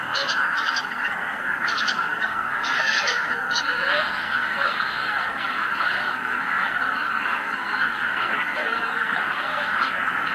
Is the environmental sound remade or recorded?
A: remade